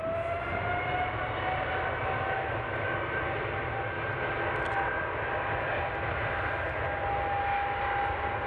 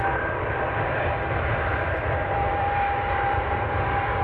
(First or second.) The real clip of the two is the first